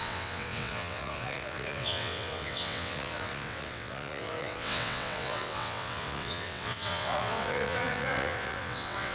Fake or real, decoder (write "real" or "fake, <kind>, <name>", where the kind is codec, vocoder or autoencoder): fake, vocoder, WaveNeXt